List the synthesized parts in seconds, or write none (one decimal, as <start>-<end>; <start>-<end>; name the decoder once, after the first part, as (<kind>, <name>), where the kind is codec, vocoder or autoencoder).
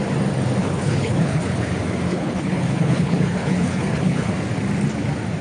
0.6-1.7 (codec, HILCodec); 2.1-4.3